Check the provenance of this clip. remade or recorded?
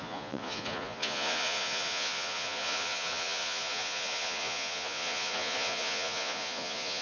remade